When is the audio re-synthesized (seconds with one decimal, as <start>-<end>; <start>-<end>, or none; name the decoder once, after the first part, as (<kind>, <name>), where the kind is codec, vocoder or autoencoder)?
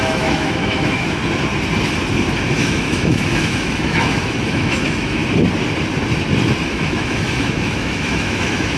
0.0-1.2 (autoencoder, DAC-VAE); 2.5-5.2; 6.7-8.8